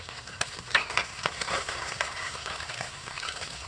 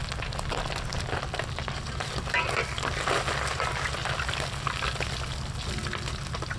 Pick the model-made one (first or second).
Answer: first